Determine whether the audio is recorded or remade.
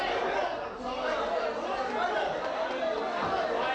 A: recorded